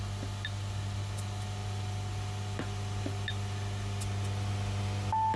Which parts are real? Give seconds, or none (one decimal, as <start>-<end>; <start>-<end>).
0.0-5.4

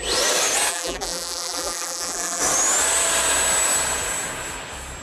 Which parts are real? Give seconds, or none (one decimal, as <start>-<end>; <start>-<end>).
0.0-0.7; 2.4-5.0

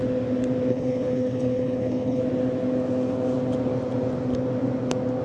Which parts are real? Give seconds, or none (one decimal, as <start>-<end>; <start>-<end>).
0.0-0.7; 2.2-5.2

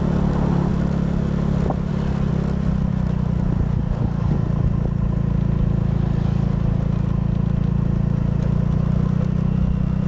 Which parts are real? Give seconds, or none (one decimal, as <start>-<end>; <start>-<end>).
0.0-2.3; 2.9-10.1

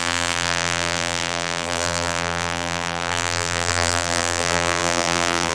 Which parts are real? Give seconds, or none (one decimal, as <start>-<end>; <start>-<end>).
none